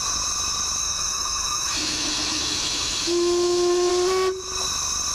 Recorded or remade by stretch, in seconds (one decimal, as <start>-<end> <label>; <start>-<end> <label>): 0.0-0.8 recorded; 0.8-3.9 remade; 3.9-5.1 recorded